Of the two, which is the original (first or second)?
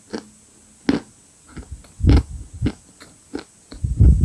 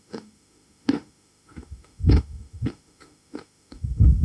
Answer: first